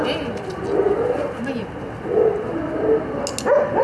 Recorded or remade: recorded